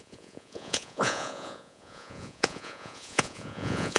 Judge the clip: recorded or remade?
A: remade